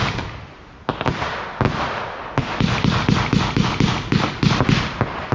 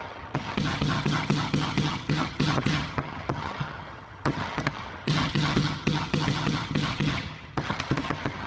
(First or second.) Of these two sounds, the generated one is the second